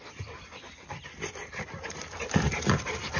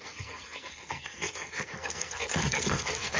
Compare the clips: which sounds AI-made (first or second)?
second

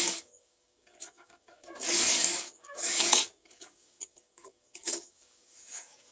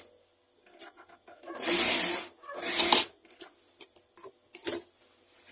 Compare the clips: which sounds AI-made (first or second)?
first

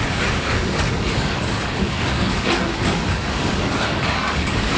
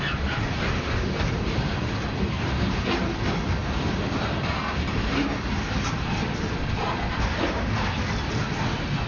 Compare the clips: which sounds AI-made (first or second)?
first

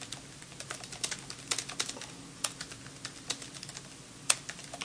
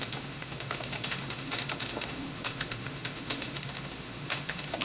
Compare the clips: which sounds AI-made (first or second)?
second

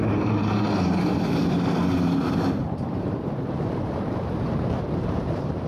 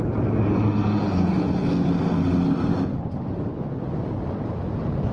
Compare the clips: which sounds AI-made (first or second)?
first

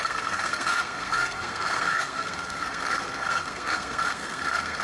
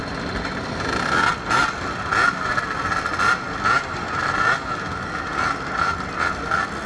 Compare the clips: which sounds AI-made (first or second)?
first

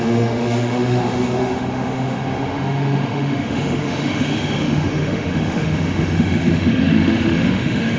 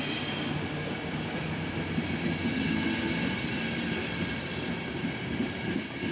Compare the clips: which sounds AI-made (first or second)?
first